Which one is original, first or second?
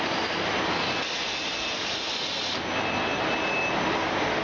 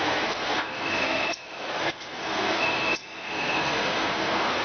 first